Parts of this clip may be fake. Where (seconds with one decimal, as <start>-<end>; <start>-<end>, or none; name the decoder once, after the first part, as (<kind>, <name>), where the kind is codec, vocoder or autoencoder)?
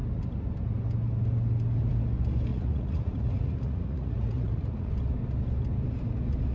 2.5-4.9 (vocoder, Vocos)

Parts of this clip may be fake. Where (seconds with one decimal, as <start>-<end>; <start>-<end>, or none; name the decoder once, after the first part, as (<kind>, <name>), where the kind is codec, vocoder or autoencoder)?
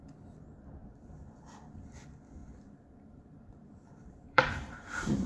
0.8-1.6 (vocoder, BigVGAN v2); 2.4-5.3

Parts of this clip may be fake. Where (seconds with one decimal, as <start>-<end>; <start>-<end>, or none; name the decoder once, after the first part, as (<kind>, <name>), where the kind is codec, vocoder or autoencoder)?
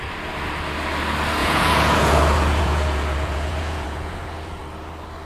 1.4-4.6 (vocoder, Vocos)